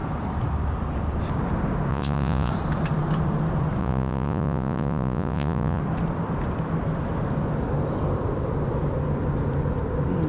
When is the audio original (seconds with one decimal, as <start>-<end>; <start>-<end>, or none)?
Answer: 0.0-1.9; 2.5-3.8; 5.8-10.3

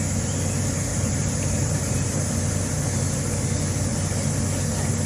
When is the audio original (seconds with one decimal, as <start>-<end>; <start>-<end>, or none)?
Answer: 0.0-0.9; 2.4-5.1